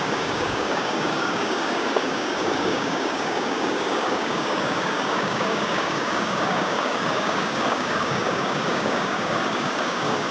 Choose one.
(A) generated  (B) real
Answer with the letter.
A